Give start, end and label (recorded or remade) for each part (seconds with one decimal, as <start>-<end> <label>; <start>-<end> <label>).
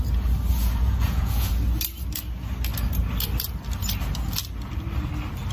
0.0-0.6 recorded; 0.6-1.5 remade; 1.5-5.5 recorded